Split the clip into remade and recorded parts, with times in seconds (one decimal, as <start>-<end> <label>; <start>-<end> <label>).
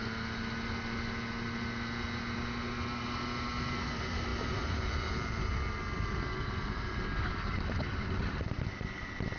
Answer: 0.0-9.4 recorded